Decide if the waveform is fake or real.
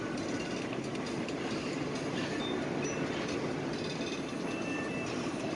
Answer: real